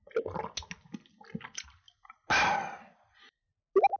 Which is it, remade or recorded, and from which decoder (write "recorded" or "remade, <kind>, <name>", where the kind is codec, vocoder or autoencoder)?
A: recorded